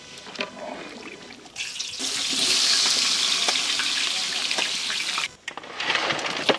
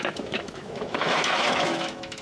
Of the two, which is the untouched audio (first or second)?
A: first